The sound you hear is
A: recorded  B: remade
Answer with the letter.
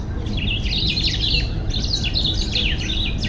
A